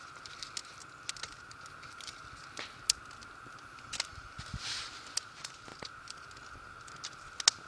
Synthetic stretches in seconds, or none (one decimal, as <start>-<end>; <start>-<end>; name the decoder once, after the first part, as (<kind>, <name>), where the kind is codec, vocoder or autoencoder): none